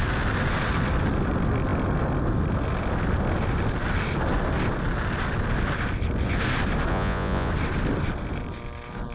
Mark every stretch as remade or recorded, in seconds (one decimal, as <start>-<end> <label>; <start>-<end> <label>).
0.0-6.9 recorded; 6.9-7.5 remade; 7.5-9.1 recorded